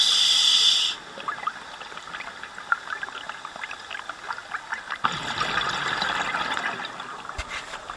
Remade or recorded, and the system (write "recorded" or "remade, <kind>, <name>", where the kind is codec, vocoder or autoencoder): recorded